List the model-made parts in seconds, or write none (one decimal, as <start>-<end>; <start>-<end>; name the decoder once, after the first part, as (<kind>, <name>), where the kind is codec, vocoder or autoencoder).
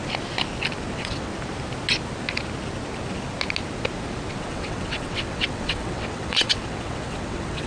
0.9-1.3 (vocoder, WaveNeXt); 4.4-7.7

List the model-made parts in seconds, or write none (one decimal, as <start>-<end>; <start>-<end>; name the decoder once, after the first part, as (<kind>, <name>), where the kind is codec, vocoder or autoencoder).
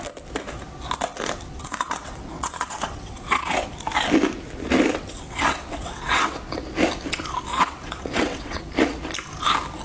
1.6-3.7 (vocoder, WaveNeXt); 4.9-6.4; 7.5-8.6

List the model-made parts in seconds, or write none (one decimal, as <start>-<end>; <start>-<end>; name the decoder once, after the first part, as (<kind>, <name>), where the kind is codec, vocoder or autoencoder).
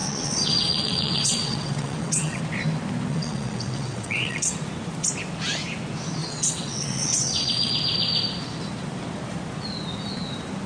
0.0-2.4 (vocoder, WaveNeXt); 3.1-4.5; 6.2-7.7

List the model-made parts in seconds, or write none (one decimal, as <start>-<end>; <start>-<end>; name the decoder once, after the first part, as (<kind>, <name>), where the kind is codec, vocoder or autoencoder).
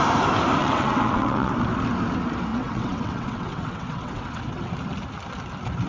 0.6-1.5 (vocoder, WaveNeXt); 2.5-4.7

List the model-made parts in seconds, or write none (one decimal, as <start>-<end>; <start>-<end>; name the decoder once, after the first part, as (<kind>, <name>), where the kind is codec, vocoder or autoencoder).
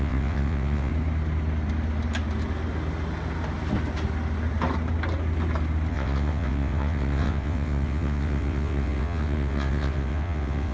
0.0-0.9 (vocoder, WaveNeXt); 5.9-10.7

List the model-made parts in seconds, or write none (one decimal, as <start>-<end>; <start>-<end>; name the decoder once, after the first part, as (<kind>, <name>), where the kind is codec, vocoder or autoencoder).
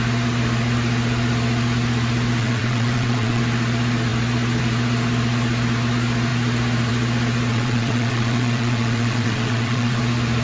2.4-3.4 (vocoder, WaveNeXt); 7.5-10.0